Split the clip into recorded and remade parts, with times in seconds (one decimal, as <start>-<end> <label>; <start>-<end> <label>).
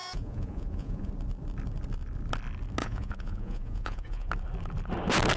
0.0-1.1 remade; 1.1-2.8 recorded; 2.8-4.3 remade; 4.3-5.4 recorded